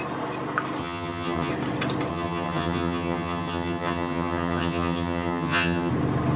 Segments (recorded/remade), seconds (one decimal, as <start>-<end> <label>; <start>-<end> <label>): 0.0-0.8 recorded; 0.8-1.5 remade; 1.5-2.1 recorded; 2.1-5.9 remade; 5.9-6.4 recorded